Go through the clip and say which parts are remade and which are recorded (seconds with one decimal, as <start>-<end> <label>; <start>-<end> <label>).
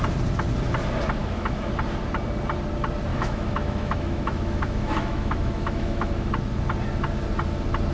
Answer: 0.0-1.2 recorded; 1.2-1.7 remade; 1.7-3.1 recorded; 3.1-6.3 remade; 6.3-7.9 recorded